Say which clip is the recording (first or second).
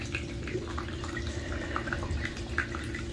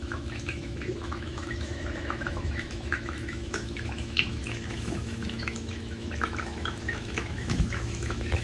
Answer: first